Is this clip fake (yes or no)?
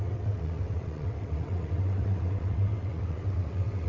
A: yes